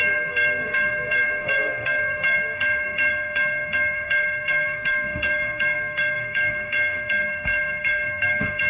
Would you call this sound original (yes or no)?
no